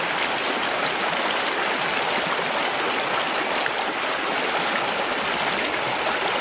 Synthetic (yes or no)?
no